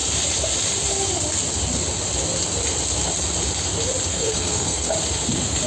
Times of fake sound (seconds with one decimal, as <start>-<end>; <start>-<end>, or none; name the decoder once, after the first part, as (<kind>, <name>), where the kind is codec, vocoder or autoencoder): 4.1-4.9 (codec, SNAC)